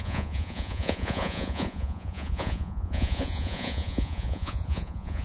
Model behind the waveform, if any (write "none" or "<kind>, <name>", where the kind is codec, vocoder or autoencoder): vocoder, Vocos